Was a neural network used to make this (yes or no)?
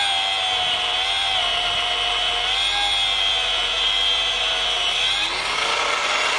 no